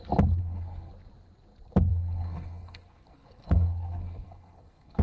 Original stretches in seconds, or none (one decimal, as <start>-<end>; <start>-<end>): 0.0-0.4; 0.9-1.9